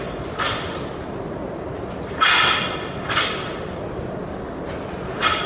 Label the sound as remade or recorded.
recorded